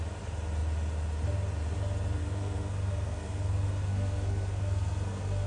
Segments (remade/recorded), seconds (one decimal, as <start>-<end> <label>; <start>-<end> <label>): 0.0-2.2 recorded; 2.2-5.5 remade